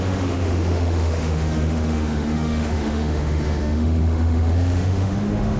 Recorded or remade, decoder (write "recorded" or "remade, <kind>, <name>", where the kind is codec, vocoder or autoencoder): remade, autoencoder, DAC-VAE